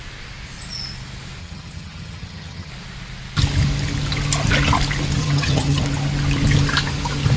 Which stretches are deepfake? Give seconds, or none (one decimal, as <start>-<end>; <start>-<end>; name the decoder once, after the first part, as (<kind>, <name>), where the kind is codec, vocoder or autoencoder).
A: 1.4-2.7 (vocoder, HiFi-GAN); 5.2-5.8

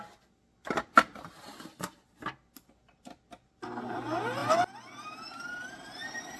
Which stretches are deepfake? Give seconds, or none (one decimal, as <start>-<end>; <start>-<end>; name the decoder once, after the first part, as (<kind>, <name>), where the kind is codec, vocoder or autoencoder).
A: none

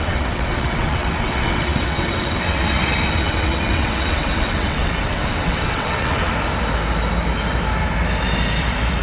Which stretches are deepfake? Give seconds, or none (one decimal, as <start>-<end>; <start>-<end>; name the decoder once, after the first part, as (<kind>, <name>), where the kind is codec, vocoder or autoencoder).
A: 0.0-6.3 (vocoder, WaveNeXt)

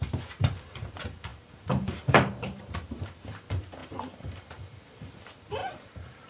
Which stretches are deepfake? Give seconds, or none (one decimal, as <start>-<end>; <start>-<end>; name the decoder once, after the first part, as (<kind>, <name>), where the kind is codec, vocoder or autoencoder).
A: 0.0-6.3 (vocoder, BigVGAN v2)

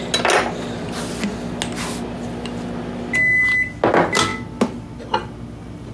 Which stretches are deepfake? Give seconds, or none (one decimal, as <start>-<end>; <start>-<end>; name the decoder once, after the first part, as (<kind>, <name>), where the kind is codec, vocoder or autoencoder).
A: none

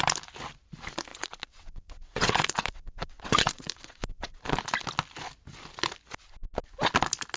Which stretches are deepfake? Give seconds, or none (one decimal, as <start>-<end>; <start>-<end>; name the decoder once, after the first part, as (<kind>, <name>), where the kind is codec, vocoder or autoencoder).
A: 1.1-4.4 (vocoder, WaveNeXt)